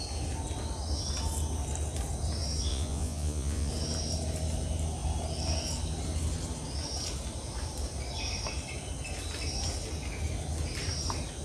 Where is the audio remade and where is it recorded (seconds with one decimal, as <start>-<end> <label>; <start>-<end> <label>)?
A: 0.0-2.7 recorded; 2.7-3.7 remade; 3.7-11.4 recorded